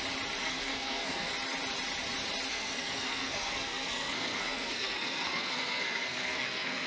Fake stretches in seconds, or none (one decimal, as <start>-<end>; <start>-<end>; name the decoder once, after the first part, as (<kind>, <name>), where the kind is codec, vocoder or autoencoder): 0.4-1.3 (codec, SNAC); 2.5-6.9

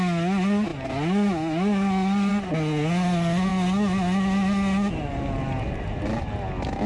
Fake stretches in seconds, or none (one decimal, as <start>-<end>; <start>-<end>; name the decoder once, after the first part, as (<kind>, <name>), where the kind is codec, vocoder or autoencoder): none

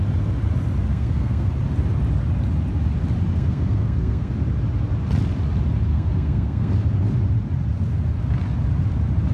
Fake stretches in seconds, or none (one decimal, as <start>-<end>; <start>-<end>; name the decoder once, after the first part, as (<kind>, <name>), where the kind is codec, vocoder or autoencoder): 0.9-1.5 (codec, SNAC); 3.3-4.3; 5.9-6.7

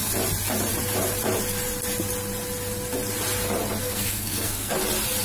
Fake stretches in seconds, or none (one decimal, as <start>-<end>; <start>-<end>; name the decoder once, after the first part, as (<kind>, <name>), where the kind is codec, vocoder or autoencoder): 3.8-4.7 (codec, SNAC)

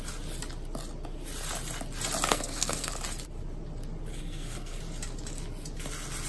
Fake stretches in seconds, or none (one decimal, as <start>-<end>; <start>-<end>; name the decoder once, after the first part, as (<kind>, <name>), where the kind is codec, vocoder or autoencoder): 2.3-2.9 (codec, SNAC); 4.1-4.8

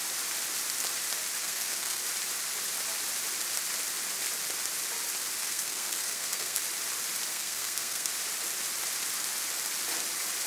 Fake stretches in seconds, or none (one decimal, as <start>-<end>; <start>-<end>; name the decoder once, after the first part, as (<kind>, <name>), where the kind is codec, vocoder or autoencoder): 1.4-2.0 (codec, SNAC); 5.4-6.6; 7.3-8.1

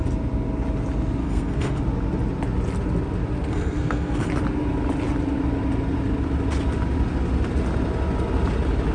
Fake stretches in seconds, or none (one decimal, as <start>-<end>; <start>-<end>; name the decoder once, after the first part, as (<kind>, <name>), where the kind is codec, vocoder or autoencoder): 1.2-1.8 (codec, SNAC); 3.5-4.3